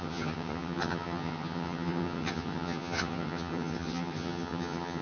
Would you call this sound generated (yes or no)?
yes